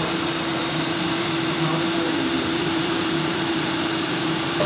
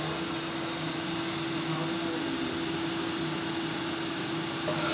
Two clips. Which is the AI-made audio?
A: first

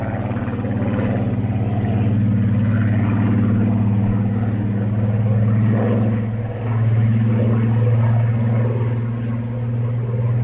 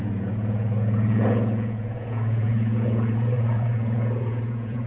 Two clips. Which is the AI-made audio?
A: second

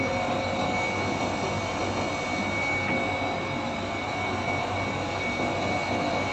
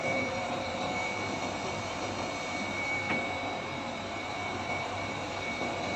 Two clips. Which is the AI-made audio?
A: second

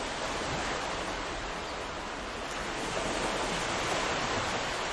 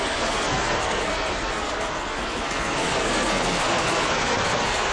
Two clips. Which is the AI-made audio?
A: second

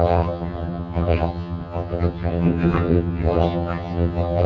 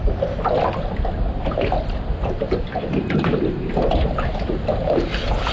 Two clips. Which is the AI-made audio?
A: first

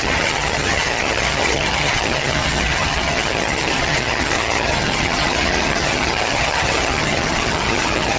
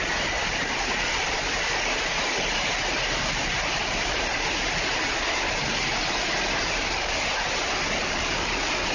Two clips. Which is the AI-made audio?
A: first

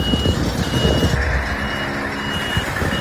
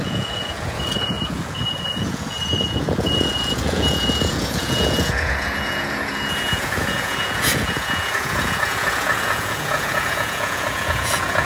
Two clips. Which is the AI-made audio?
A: second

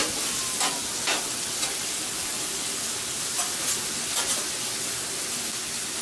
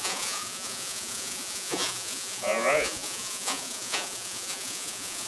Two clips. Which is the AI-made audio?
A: second